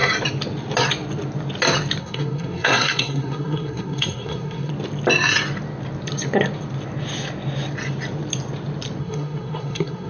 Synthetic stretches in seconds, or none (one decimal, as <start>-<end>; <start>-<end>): 2.0-4.7; 9.0-10.1

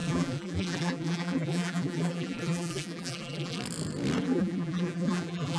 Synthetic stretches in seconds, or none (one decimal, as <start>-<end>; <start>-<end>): 0.0-3.6; 4.2-5.6

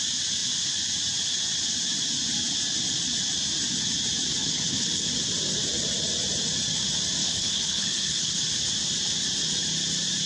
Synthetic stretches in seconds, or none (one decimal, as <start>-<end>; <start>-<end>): 4.4-5.1; 7.2-8.4

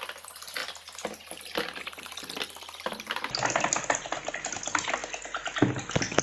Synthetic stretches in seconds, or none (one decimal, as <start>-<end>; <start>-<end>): none

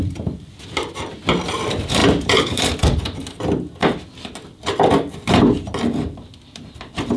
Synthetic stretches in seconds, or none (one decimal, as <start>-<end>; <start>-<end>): 0.0-3.8; 4.5-7.2

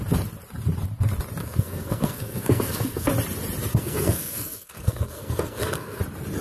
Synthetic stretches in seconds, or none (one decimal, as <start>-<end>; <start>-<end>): 1.4-3.1; 3.7-6.0

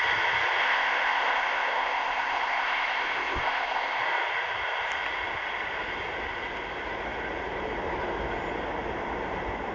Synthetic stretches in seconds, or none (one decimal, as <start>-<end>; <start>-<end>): 0.6-4.0

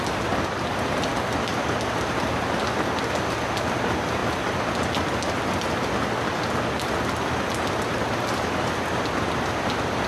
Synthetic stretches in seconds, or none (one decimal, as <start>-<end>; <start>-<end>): 1.1-3.0